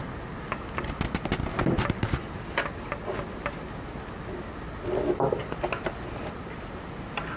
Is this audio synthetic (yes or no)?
no